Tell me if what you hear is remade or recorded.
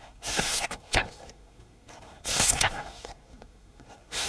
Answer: remade